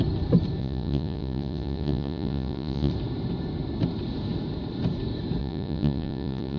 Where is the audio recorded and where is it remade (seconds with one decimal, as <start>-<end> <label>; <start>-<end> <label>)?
0.0-0.6 recorded; 0.6-2.9 remade; 2.9-5.4 recorded; 5.4-6.6 remade